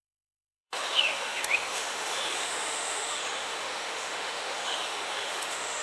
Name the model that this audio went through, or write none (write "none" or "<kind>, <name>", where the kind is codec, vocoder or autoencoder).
autoencoder, DAC-VAE